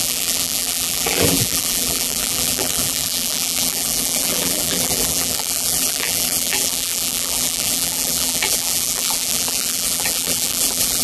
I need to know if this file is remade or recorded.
remade